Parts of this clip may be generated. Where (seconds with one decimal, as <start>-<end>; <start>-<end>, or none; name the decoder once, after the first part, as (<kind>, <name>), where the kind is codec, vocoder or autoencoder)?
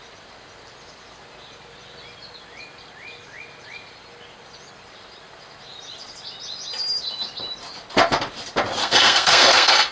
8.8-9.9 (codec, SNAC)